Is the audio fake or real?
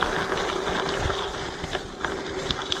real